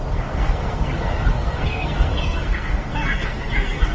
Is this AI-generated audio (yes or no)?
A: yes